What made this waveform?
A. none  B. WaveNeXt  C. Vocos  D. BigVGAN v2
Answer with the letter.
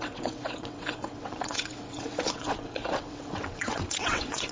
B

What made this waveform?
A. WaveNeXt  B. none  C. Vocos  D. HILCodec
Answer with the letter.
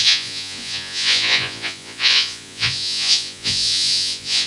C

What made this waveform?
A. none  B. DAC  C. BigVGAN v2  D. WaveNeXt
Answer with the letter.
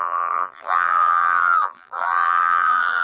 C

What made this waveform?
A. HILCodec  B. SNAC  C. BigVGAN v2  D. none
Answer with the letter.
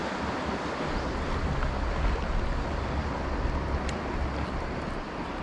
D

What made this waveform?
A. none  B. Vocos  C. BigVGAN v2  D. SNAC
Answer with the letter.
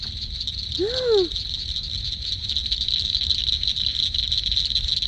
A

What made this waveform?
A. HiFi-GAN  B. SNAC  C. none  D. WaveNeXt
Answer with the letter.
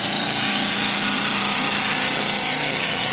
A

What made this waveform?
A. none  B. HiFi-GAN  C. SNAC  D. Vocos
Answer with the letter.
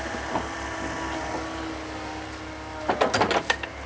A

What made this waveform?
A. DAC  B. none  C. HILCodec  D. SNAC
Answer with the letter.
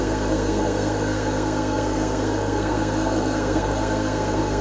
D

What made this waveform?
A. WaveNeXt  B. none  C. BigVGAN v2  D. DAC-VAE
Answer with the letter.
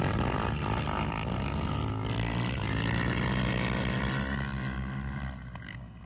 B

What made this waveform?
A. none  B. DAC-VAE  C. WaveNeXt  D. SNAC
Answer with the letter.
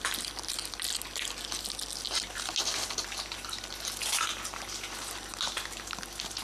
A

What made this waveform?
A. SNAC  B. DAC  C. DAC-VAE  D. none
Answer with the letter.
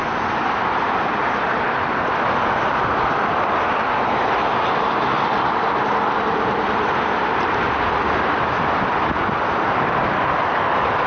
D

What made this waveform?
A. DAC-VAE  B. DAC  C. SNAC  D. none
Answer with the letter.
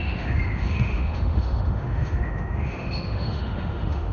A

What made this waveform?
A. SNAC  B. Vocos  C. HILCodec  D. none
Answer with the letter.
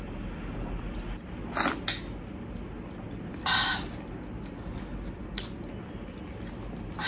D